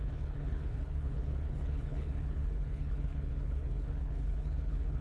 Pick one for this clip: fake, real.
fake